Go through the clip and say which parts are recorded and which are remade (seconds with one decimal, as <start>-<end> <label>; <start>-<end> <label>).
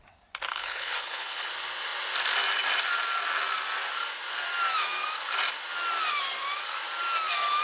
0.0-0.5 recorded; 0.5-1.5 remade; 1.5-7.6 recorded